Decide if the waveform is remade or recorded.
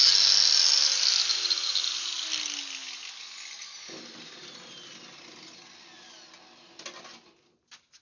recorded